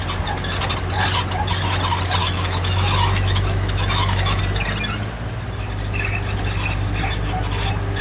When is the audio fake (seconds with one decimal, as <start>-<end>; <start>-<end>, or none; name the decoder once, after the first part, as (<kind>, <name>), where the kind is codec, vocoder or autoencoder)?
2.2-4.4 (autoencoder, DAC-VAE)